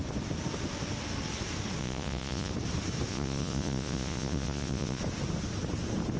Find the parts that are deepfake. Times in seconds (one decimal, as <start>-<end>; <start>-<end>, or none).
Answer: 1.8-2.5; 3.1-5.0

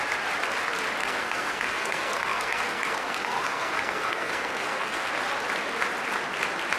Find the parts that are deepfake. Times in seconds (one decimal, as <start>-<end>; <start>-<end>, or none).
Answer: 1.0-5.1

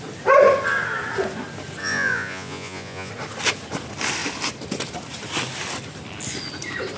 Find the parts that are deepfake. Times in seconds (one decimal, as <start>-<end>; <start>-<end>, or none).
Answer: 1.8-3.1